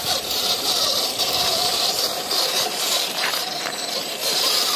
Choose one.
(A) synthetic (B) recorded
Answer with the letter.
A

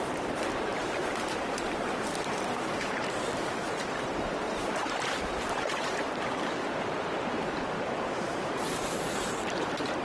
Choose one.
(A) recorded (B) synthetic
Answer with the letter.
B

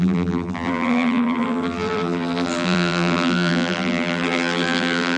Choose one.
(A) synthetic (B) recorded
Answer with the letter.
A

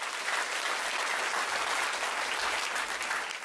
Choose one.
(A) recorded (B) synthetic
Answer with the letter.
A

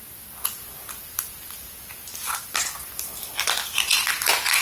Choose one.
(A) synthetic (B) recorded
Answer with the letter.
B